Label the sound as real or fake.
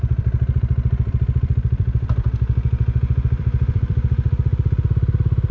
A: fake